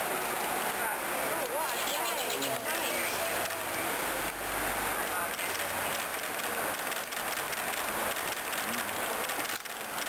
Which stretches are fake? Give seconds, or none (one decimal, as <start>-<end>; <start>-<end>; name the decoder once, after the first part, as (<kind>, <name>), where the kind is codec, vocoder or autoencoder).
6.1-6.8 (vocoder, BigVGAN v2)